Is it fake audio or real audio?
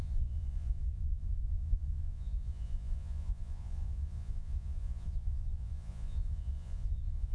fake